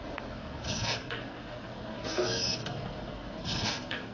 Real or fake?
fake